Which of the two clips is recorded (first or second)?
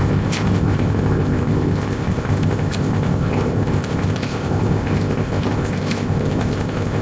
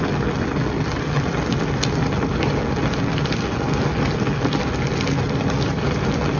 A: second